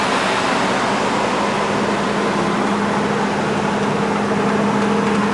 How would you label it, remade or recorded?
recorded